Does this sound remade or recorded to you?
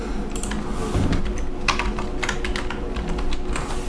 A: recorded